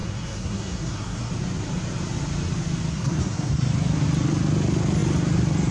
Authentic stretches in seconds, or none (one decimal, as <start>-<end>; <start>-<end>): 1.3-2.9; 3.7-5.7